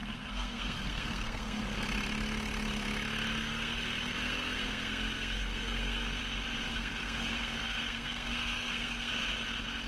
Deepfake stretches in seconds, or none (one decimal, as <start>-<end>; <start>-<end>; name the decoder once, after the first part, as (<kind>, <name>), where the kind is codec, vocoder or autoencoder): 0.0-1.6 (codec, SNAC); 3.4-6.2; 6.7-9.1